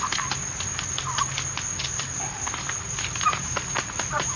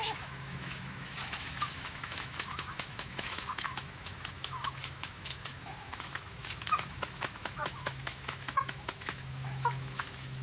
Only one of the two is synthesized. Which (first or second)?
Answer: second